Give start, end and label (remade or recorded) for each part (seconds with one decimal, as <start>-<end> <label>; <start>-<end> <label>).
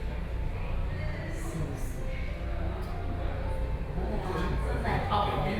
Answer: 0.0-4.6 recorded; 4.6-5.6 remade